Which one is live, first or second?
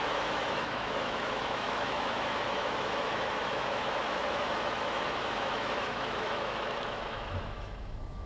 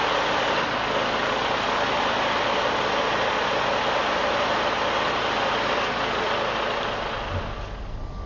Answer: second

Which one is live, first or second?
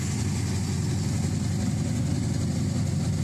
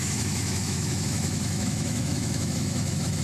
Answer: first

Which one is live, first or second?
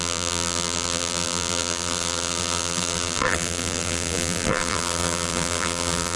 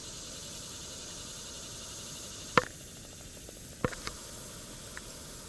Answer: second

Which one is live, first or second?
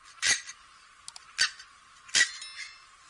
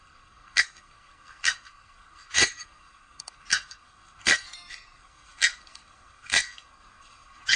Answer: first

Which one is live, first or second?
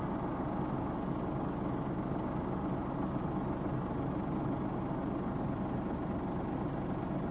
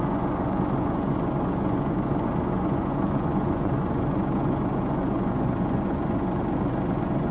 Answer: first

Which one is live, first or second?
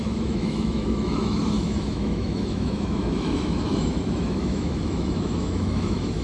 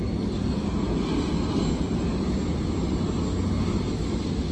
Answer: second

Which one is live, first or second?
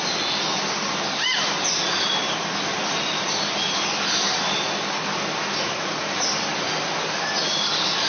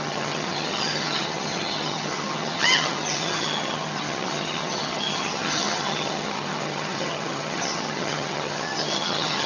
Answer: first